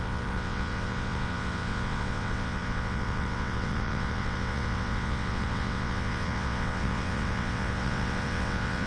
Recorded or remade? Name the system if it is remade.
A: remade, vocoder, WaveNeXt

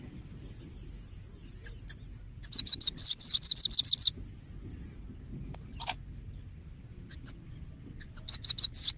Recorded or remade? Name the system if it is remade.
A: recorded